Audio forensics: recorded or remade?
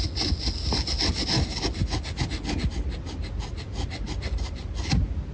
recorded